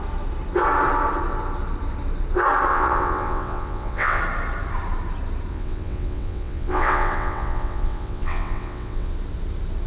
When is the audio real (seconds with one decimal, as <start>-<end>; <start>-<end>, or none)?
0.0-2.7; 4.2-5.5; 9.1-9.9